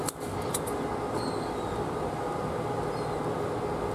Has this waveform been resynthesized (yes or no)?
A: no